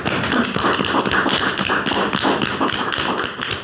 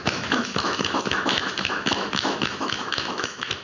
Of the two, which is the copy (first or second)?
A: second